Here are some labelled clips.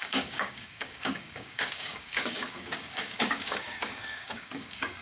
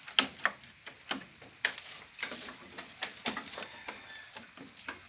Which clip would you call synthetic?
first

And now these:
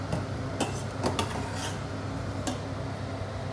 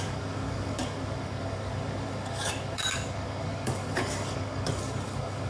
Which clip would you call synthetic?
second